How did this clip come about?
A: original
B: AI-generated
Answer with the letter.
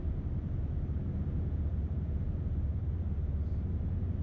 A